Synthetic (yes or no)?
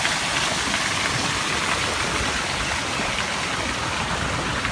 no